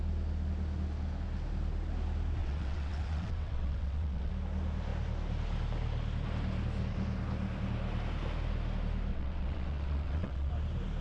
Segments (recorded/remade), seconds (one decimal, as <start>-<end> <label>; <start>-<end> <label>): 0.0-2.4 recorded; 2.4-4.3 remade; 4.3-9.1 recorded; 9.1-10.5 remade; 10.5-11.0 recorded